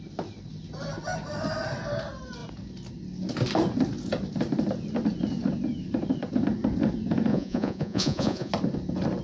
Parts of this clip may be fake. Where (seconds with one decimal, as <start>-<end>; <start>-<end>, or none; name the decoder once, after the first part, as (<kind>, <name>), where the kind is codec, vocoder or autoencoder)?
7.3-8.5 (vocoder, Vocos)